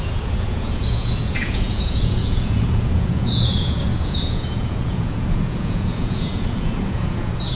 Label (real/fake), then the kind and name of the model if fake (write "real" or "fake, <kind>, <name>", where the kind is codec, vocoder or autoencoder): fake, vocoder, Vocos